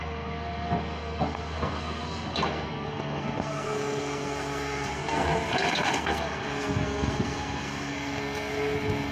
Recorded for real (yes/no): no